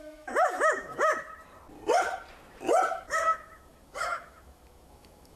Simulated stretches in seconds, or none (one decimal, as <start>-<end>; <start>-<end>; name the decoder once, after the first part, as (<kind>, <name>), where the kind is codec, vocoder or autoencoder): 0.0-1.1 (autoencoder, DAC-VAE); 2.9-5.4